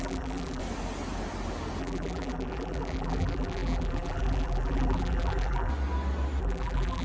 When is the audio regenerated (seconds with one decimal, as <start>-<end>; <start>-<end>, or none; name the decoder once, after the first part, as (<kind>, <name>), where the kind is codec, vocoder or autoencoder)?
0.0-0.6 (vocoder, BigVGAN v2); 1.8-5.7; 6.4-7.0